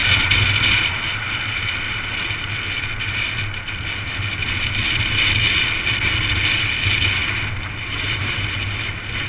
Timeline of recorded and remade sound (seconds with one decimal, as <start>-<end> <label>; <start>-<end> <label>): 0.0-9.3 recorded